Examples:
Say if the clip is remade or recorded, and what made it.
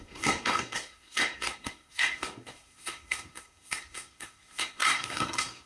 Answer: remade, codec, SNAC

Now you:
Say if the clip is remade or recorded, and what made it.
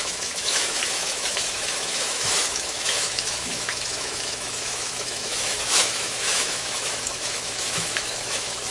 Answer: remade, autoencoder, DAC-VAE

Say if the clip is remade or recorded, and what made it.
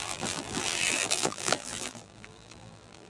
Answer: remade, vocoder, BigVGAN v2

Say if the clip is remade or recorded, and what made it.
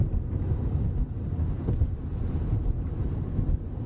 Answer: remade, vocoder, BigVGAN v2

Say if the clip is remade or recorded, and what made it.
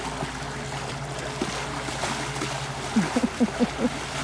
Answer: recorded